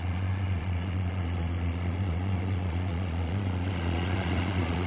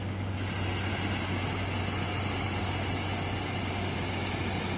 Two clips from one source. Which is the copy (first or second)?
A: first